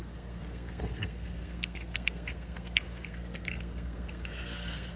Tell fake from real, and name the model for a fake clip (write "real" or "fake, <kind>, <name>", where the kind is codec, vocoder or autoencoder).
fake, codec, SNAC